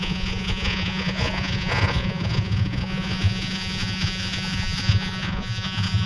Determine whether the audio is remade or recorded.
remade